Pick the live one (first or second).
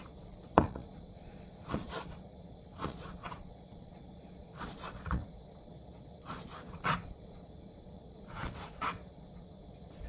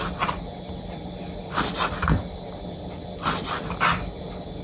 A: second